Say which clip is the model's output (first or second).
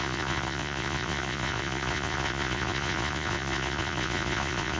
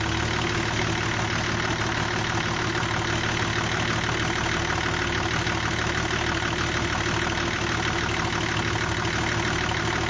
first